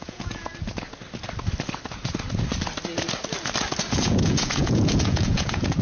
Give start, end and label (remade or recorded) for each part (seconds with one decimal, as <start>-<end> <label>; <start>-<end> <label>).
0.0-0.5 remade; 0.5-4.0 recorded; 4.0-5.8 remade